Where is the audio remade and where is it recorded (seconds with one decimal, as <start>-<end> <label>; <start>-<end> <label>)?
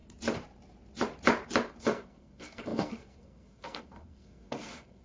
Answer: 0.0-1.8 recorded; 1.8-5.0 remade